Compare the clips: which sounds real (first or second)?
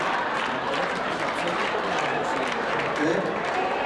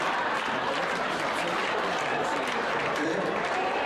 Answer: first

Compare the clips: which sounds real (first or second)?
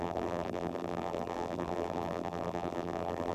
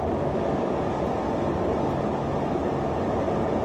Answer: second